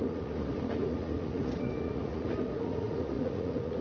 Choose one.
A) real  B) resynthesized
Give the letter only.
B